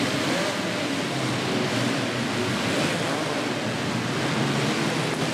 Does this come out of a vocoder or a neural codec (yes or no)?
no